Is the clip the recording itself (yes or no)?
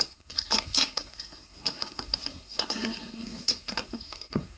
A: no